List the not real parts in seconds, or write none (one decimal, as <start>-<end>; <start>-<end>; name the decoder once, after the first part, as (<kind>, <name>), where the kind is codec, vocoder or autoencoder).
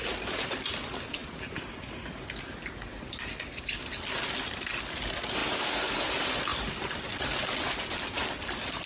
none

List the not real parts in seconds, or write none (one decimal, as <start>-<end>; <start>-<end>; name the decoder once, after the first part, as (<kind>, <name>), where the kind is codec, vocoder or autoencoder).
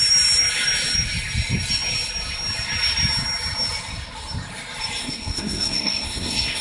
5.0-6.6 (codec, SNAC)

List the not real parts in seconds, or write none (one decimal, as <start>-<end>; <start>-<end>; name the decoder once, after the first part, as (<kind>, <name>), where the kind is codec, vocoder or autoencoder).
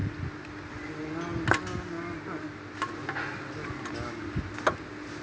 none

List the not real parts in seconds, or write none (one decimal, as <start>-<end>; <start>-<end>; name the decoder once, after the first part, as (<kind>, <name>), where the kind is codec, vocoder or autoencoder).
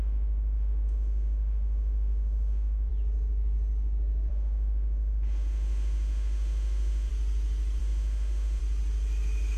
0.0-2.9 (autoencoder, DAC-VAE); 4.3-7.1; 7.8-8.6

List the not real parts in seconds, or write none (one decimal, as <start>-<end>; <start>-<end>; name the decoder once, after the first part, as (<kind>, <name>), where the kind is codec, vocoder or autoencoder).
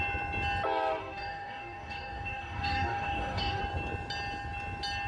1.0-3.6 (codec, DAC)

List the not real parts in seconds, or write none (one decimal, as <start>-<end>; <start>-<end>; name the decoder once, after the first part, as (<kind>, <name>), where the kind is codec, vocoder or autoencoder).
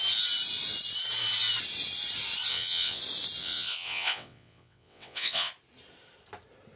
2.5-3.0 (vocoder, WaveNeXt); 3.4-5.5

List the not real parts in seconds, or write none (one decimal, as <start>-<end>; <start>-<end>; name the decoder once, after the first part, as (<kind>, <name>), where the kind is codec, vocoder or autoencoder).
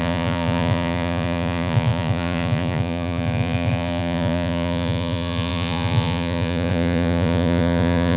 0.0-8.2 (vocoder, Vocos)